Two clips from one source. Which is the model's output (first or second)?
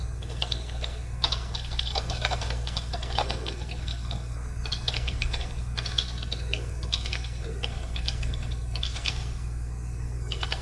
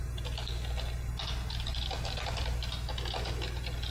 first